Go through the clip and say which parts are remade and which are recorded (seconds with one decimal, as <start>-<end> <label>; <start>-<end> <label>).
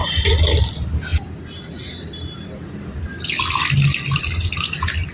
0.0-5.1 recorded